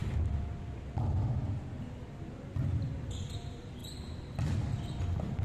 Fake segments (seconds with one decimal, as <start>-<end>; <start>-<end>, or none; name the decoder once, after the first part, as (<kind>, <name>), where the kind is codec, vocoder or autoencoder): 1.8-5.4 (vocoder, BigVGAN v2)